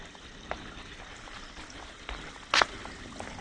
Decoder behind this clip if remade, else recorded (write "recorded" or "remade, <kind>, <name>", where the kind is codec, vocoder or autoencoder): recorded